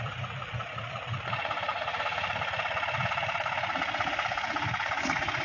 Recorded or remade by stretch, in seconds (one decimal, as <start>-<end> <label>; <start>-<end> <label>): 0.0-5.4 remade